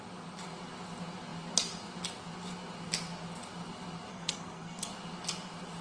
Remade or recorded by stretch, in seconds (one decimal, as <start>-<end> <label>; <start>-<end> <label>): 0.0-4.1 recorded; 4.1-4.9 remade; 4.9-5.8 recorded